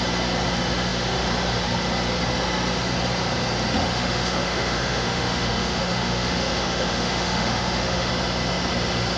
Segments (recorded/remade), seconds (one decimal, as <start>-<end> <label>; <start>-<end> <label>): 0.0-3.8 recorded; 3.8-8.1 remade; 8.1-9.2 recorded